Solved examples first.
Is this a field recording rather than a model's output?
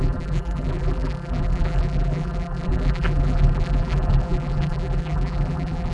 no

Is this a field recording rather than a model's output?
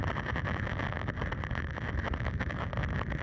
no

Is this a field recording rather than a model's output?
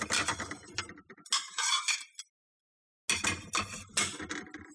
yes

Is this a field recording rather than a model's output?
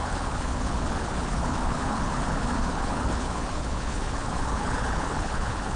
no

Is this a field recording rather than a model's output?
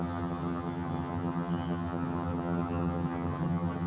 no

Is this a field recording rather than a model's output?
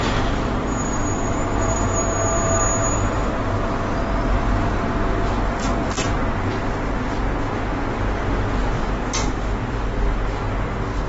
yes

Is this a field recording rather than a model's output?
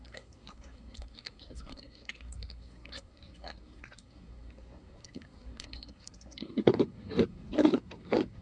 no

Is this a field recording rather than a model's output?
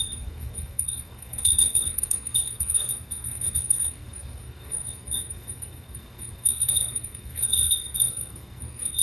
no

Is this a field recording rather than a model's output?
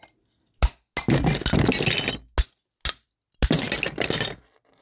yes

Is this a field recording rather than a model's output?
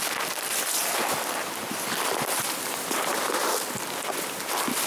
no